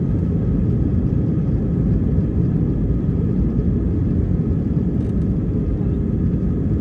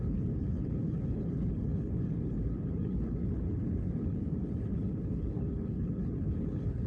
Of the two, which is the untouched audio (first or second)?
first